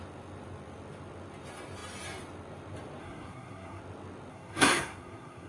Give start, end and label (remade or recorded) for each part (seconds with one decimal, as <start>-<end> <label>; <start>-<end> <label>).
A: 0.0-3.0 recorded; 3.0-3.8 remade; 3.8-4.3 recorded; 4.3-5.5 remade